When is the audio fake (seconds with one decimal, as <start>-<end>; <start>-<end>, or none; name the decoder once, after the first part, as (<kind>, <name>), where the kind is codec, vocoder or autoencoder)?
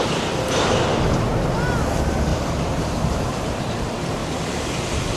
2.3-3.6 (vocoder, BigVGAN v2)